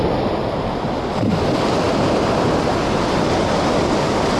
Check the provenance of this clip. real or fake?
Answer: real